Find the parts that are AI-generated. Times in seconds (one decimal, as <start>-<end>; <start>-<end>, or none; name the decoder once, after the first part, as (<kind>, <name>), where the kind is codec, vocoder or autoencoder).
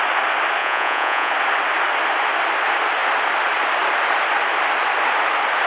0.6-1.3 (vocoder, Vocos)